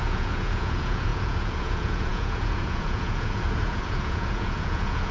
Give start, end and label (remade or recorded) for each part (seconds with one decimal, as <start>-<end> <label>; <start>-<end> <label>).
0.0-5.1 remade